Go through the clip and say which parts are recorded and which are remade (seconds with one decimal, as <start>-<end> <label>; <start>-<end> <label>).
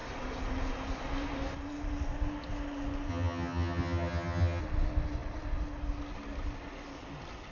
0.0-3.1 recorded; 3.1-4.6 remade; 4.6-7.5 recorded